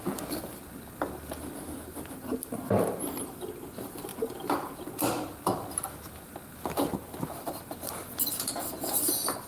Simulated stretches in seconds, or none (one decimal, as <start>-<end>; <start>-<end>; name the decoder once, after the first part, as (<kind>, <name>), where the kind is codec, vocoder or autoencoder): none